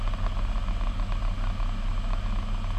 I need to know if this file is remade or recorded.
recorded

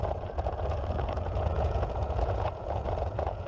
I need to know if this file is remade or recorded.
remade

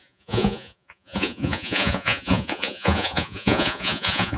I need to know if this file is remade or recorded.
remade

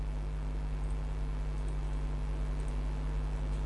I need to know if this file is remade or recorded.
recorded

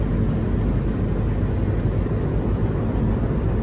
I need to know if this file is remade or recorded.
recorded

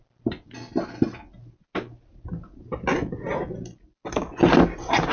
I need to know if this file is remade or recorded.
recorded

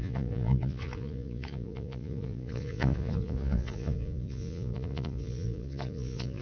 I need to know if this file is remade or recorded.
remade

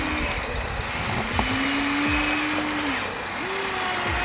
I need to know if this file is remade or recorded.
recorded